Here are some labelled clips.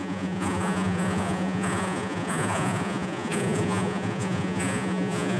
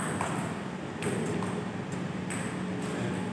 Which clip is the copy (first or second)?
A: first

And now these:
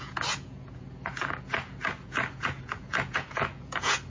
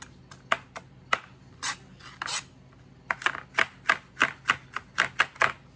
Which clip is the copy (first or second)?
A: first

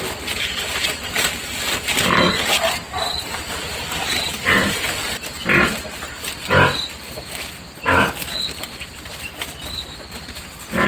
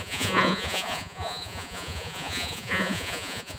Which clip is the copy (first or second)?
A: second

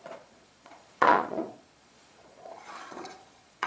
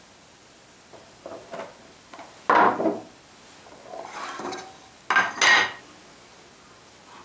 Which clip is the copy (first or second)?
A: first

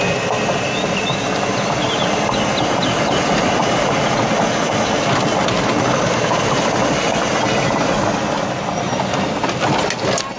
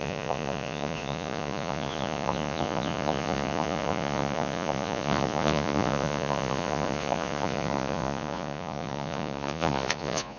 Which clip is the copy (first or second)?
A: second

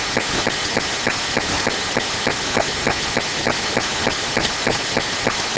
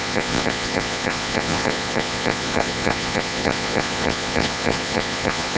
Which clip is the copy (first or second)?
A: second